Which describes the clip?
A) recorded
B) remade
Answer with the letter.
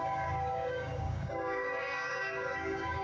B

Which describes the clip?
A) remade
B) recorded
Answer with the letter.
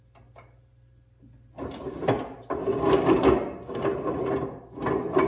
B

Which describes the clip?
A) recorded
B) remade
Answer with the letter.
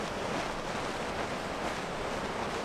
A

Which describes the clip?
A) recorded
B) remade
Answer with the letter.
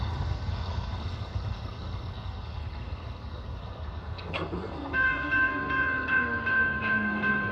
B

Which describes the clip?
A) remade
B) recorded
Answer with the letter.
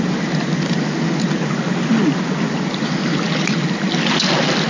B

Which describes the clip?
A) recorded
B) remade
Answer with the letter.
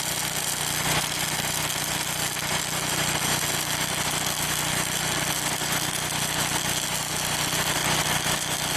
A